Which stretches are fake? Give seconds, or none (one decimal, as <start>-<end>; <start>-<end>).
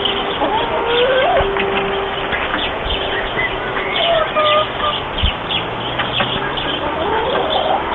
2.5-4.2